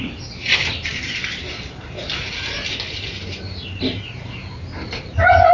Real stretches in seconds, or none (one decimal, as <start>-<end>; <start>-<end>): 0.0-5.5

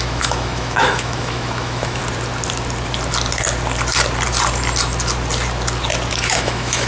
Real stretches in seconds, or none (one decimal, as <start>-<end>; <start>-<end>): 2.0-6.1

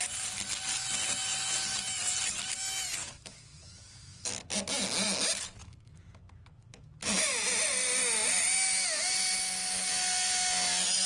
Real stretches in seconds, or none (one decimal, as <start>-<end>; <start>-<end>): 0.0-3.0; 4.4-5.6; 7.1-11.1

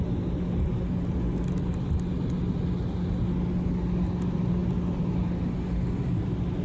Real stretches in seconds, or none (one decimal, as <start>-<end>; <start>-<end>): 0.0-6.6

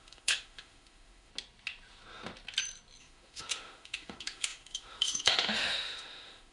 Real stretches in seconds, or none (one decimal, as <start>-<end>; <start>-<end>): 1.3-3.0

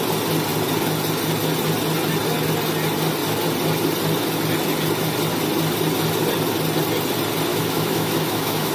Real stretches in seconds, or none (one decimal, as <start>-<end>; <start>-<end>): 0.0-7.5

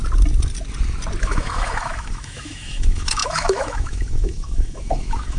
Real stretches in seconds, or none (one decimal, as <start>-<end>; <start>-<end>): 0.0-1.2